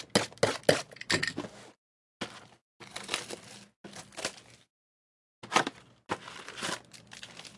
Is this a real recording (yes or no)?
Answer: yes